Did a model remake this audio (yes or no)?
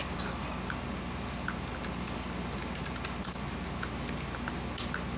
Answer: no